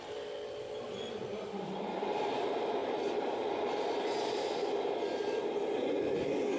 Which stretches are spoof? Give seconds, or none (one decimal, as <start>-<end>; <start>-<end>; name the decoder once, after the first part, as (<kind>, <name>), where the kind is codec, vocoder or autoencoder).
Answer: 1.3-2.0 (vocoder, BigVGAN v2); 2.8-3.7